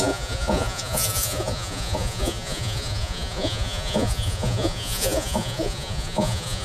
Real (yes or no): no